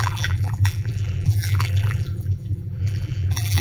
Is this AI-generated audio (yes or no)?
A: yes